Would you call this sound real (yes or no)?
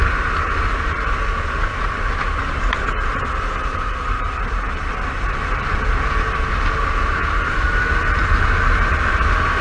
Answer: yes